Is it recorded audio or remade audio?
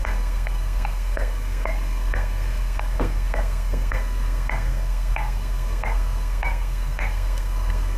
remade